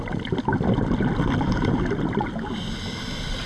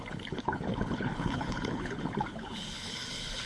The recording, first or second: first